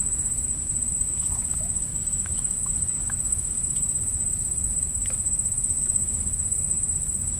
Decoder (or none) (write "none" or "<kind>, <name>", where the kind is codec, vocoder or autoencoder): autoencoder, DAC-VAE